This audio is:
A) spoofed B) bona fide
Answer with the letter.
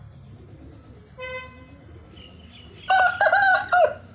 B